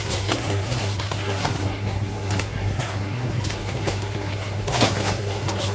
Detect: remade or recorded remade